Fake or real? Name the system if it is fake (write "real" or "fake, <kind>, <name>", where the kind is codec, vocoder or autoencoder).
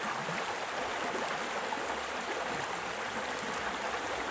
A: real